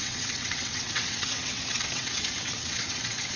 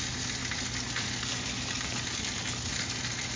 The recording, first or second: second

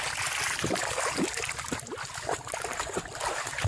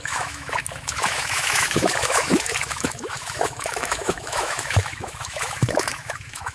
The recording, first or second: first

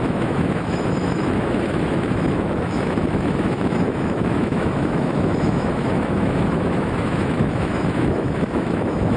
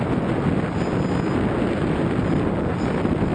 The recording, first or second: second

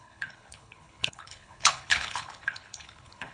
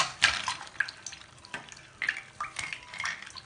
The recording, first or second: second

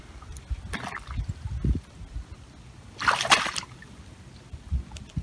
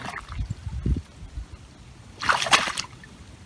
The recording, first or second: first